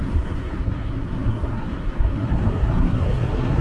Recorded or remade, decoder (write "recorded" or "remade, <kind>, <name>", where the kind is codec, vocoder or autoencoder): remade, codec, SNAC